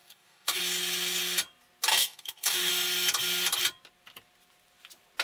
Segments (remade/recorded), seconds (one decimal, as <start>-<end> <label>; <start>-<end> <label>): 0.0-0.6 remade; 0.6-1.9 recorded; 1.9-2.7 remade; 2.7-5.2 recorded